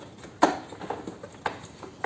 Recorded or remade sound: recorded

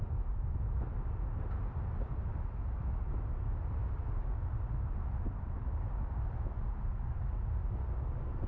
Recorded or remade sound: recorded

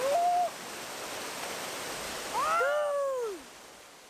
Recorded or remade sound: recorded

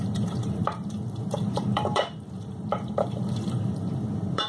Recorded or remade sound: remade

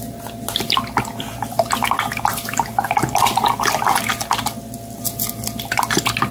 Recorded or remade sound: recorded